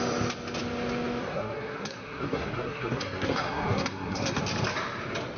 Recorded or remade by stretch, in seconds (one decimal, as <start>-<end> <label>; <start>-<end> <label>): 0.0-1.2 recorded; 1.2-4.4 remade; 4.4-5.4 recorded